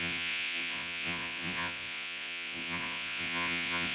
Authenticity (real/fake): fake